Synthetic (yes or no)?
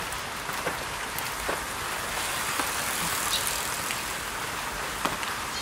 no